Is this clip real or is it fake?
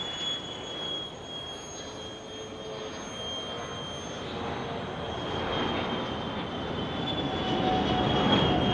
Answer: real